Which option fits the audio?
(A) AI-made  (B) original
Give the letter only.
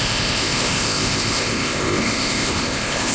A